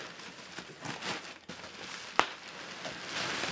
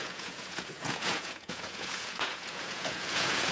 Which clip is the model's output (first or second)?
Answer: second